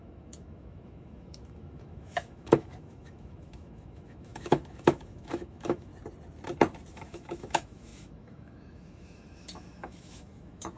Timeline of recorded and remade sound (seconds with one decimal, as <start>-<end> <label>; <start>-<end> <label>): 0.0-5.9 remade; 5.9-6.9 recorded; 6.9-10.8 remade